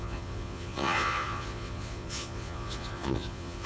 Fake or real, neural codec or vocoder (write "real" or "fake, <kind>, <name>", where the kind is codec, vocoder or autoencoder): fake, vocoder, Vocos